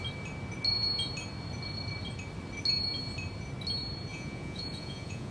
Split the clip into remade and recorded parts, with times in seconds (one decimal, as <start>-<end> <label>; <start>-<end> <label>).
0.0-4.1 recorded; 4.1-5.3 remade